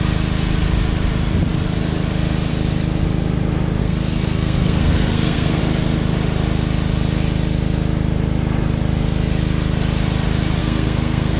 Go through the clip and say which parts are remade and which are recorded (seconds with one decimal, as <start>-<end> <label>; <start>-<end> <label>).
0.0-3.8 recorded; 3.8-5.6 remade; 5.6-10.6 recorded; 10.6-11.4 remade